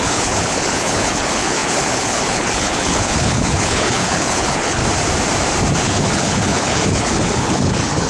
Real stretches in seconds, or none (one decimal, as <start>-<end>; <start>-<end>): 4.8-5.8